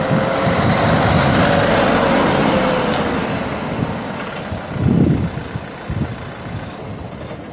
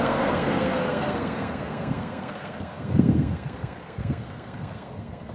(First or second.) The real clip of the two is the first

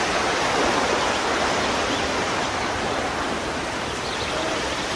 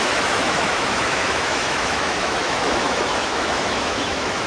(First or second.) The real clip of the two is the first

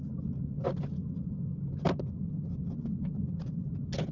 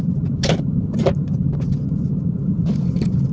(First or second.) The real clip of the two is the first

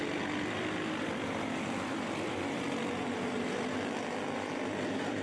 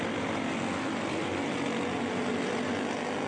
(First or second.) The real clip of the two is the second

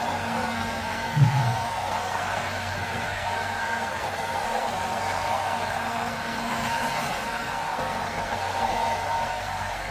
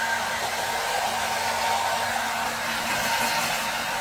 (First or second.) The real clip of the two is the second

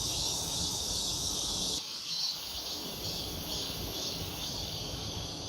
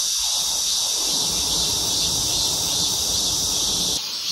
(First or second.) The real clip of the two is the second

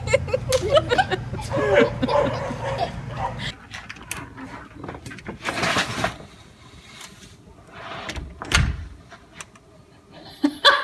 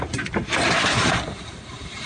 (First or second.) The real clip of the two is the first